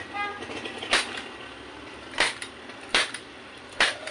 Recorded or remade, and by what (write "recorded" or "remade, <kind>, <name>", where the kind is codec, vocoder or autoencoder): recorded